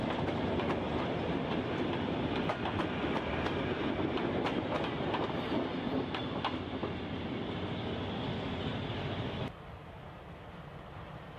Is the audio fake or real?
real